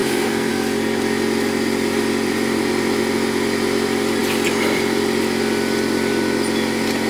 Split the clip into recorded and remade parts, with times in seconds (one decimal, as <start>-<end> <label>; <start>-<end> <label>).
0.0-0.5 remade; 0.5-7.1 recorded